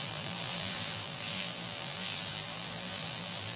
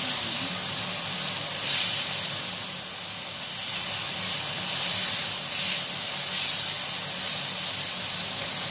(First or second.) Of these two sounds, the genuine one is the second